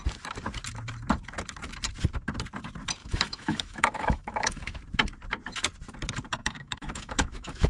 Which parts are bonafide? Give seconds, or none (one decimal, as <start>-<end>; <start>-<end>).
0.0-3.0; 4.8-6.4

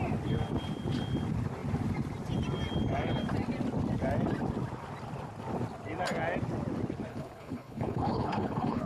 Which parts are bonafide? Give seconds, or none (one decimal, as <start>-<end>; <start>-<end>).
0.0-7.1

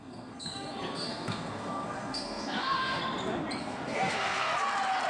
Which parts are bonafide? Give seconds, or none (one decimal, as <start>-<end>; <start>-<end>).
3.0-3.6; 4.5-5.1

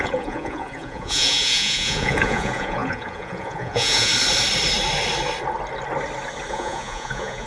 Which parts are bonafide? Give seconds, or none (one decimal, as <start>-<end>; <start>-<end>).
4.1-6.5

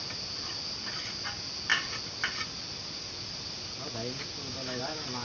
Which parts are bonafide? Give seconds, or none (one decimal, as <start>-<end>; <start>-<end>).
0.0-5.2

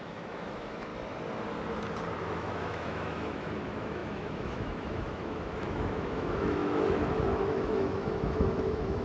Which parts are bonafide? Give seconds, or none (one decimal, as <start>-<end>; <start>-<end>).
0.9-2.2